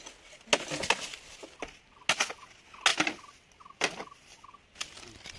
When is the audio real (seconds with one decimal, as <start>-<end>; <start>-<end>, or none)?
0.0-5.4